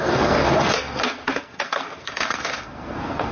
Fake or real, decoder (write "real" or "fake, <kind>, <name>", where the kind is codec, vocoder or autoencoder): fake, codec, SNAC